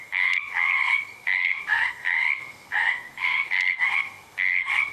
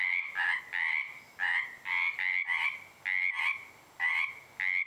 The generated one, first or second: first